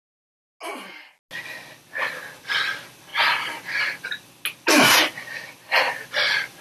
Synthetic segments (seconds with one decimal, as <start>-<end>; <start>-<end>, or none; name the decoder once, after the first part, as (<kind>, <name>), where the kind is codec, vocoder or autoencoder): none